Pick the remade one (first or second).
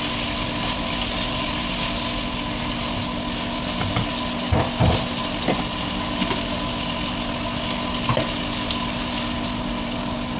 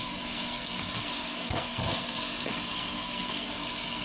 second